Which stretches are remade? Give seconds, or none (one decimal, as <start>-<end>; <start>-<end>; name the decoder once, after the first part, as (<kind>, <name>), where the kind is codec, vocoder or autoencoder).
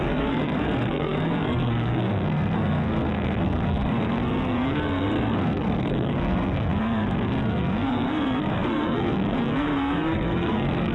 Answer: 0.0-10.9 (codec, SNAC)